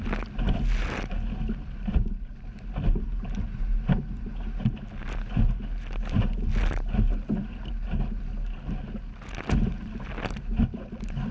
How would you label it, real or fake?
real